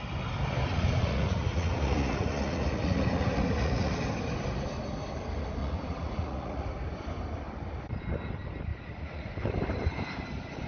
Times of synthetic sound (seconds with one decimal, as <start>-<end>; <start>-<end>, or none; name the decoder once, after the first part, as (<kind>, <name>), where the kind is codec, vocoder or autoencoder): 0.7-4.0 (vocoder, Vocos); 5.6-6.6; 8.7-9.3